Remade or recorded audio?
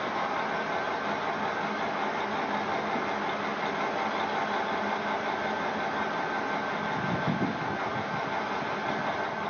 recorded